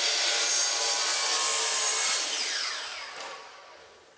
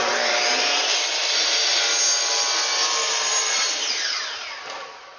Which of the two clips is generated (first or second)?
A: first